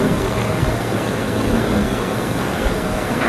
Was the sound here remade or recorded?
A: remade